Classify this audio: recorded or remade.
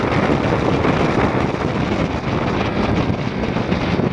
recorded